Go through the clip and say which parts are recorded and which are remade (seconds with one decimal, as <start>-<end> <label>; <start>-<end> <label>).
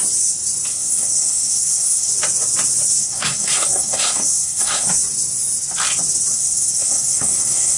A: 0.0-0.7 recorded; 0.7-2.1 remade; 2.1-3.0 recorded; 3.0-4.9 remade; 4.9-6.3 recorded; 6.3-7.8 remade